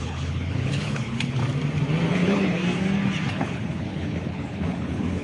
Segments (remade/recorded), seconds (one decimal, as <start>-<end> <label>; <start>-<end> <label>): 0.0-1.4 remade; 1.4-2.1 recorded; 2.1-2.6 remade; 2.6-3.3 recorded; 3.3-5.2 remade

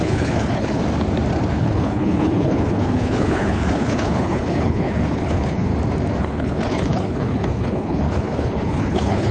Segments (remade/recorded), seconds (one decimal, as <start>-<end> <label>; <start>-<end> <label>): 0.0-0.8 remade; 0.8-1.5 recorded; 1.5-5.7 remade; 5.7-6.2 recorded; 6.2-9.3 remade

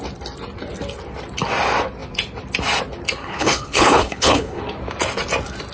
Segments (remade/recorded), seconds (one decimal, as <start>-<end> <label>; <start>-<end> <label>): 0.0-3.2 recorded; 3.2-4.6 remade; 4.6-5.7 recorded

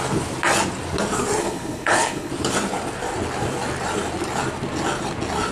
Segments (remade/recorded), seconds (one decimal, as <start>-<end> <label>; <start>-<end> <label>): 0.0-1.4 recorded; 1.4-2.3 remade; 2.3-5.5 recorded

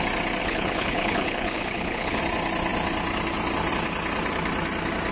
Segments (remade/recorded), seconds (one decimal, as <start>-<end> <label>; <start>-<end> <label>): 0.0-0.4 recorded; 0.4-2.2 remade; 2.2-5.1 recorded

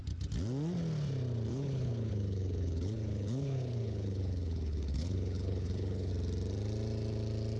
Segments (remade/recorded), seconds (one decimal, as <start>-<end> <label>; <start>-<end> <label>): 0.0-1.5 recorded; 1.5-6.1 remade; 6.1-7.6 recorded